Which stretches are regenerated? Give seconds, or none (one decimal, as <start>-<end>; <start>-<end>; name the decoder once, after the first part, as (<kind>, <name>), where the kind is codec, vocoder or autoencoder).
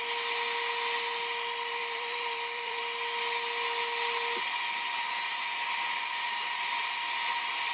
1.8-2.8 (vocoder, BigVGAN v2)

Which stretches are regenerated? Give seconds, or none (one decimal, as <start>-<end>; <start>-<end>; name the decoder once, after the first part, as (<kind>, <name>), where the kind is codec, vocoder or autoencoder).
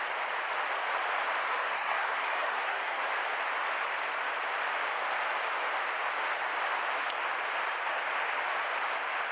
1.4-3.0 (codec, SNAC)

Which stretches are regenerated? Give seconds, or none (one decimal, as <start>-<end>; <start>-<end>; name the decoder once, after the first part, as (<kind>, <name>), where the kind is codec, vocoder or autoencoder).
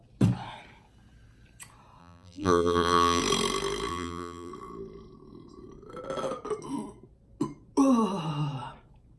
2.0-3.2 (vocoder, BigVGAN v2); 3.9-4.5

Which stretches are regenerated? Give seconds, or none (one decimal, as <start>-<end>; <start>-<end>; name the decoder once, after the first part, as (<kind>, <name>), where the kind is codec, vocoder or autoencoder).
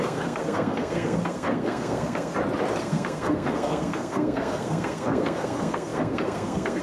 0.0-2.3 (codec, SNAC); 2.8-6.8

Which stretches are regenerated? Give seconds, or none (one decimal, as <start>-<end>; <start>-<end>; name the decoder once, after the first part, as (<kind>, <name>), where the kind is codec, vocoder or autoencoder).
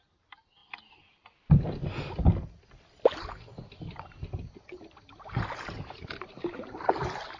none